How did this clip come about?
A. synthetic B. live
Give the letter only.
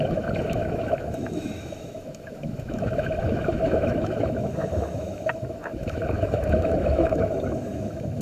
A